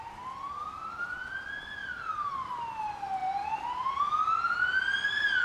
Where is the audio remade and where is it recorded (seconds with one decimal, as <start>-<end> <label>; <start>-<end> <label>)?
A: 0.0-1.8 recorded; 1.8-2.3 remade; 2.3-5.4 recorded